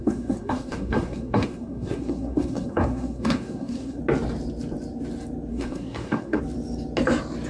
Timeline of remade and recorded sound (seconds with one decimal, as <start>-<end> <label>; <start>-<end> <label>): 0.0-4.0 remade; 4.0-5.5 recorded; 5.5-6.4 remade; 6.4-7.5 recorded